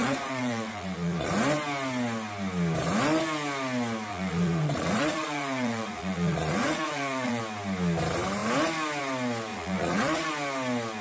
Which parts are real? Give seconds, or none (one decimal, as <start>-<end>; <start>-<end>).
1.3-4.1; 7.4-9.5; 10.3-11.0